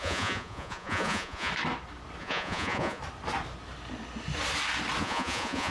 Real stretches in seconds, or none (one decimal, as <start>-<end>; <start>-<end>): 1.5-2.2; 3.0-5.0